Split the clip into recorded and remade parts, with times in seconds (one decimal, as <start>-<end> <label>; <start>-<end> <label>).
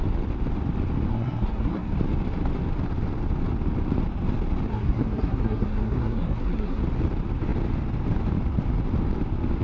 0.0-1.1 recorded; 1.1-1.9 remade; 1.9-4.7 recorded; 4.7-6.8 remade; 6.8-9.6 recorded